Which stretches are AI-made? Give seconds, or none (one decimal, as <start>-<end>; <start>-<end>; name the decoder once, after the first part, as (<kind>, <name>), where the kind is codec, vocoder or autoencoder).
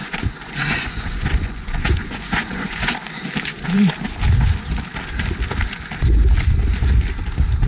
0.0-3.2 (vocoder, Vocos)